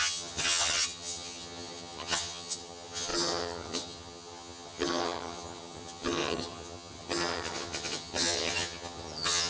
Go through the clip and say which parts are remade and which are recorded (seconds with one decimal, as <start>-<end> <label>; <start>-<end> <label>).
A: 0.0-9.5 remade